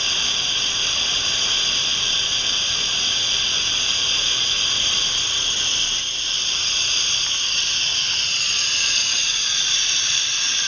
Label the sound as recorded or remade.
recorded